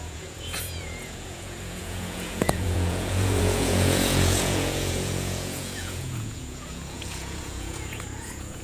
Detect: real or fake fake